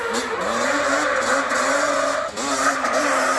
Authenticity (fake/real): real